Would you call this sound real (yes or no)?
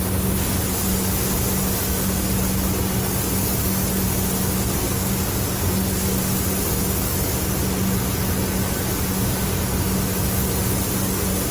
yes